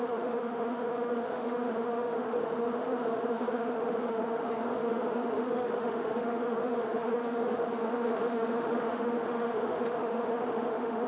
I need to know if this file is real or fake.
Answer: fake